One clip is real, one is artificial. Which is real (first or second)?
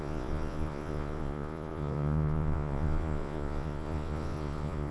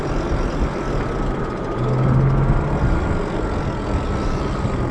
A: second